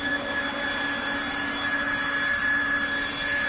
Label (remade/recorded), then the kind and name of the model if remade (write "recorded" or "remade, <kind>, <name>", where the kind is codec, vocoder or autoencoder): recorded